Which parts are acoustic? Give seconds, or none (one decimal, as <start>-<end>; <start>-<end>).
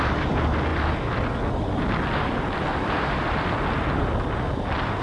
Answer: 0.0-5.0